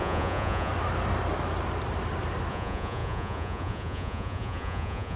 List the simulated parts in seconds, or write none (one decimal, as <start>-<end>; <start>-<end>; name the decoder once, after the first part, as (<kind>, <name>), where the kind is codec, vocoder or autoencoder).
0.0-0.7 (vocoder, Vocos); 2.5-5.2